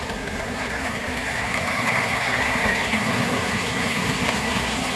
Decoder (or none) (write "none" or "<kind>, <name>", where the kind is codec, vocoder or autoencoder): codec, SNAC